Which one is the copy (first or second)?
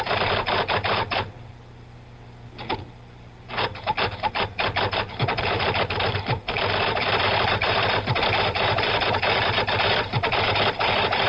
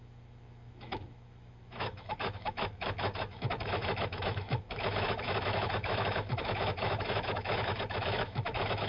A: second